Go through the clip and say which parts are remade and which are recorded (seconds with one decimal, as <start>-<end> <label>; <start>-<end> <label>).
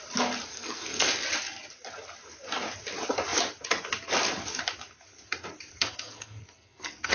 0.0-0.5 recorded; 0.5-1.1 remade; 1.1-5.7 recorded; 5.7-7.1 remade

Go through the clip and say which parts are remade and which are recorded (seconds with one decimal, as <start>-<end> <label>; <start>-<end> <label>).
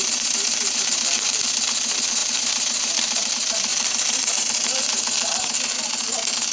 0.0-2.2 recorded; 2.2-3.3 remade; 3.3-3.7 recorded; 3.7-4.4 remade; 4.4-6.5 recorded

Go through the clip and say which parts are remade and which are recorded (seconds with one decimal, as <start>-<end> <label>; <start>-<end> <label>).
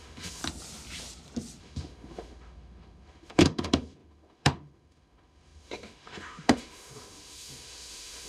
0.0-0.4 remade; 0.4-1.6 recorded; 1.6-8.3 remade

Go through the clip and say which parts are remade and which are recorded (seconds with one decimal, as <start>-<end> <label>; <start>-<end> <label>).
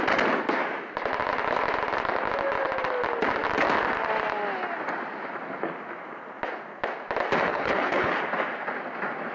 0.0-7.5 recorded; 7.5-8.1 remade; 8.1-9.3 recorded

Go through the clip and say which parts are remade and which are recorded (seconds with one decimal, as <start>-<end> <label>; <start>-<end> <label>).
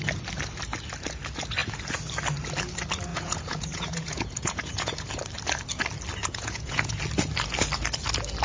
0.0-3.1 recorded; 3.1-5.1 remade; 5.1-6.2 recorded; 6.2-7.0 remade; 7.0-8.4 recorded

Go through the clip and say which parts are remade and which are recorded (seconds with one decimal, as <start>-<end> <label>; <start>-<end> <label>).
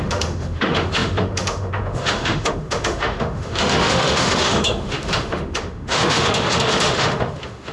0.0-7.7 remade